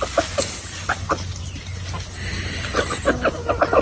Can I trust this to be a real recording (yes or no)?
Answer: yes